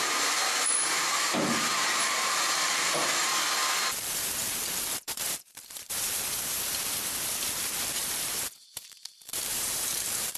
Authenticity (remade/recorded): remade